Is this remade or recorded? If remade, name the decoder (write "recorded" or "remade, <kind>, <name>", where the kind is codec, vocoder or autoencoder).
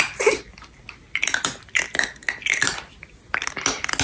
recorded